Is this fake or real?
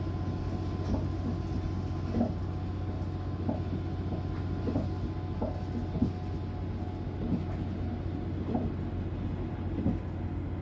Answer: real